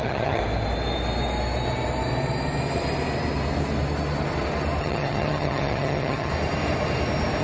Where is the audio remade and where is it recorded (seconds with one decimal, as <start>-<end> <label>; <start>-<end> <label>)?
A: 0.0-0.4 remade; 0.4-4.8 recorded; 4.8-6.3 remade; 6.3-7.4 recorded

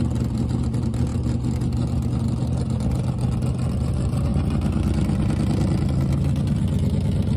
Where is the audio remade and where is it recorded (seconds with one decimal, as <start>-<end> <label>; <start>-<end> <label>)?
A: 0.0-7.4 recorded

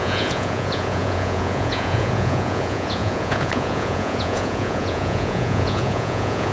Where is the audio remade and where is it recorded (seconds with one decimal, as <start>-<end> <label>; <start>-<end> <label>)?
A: 0.0-6.5 remade

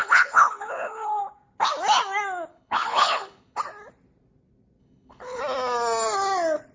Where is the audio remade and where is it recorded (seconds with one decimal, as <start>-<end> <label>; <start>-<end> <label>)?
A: 0.0-1.2 remade; 1.2-2.5 recorded; 2.5-3.6 remade; 3.6-4.8 recorded; 4.8-5.4 remade; 5.4-6.7 recorded

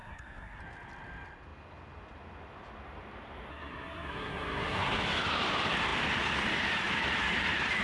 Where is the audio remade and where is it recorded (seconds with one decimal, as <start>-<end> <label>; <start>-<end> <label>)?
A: 0.0-0.6 remade; 0.6-3.5 recorded; 3.5-5.0 remade; 5.0-7.8 recorded

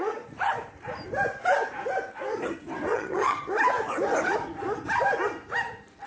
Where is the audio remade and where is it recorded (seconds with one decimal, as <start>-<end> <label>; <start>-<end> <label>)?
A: 0.0-2.9 recorded; 2.9-3.5 remade; 3.5-6.1 recorded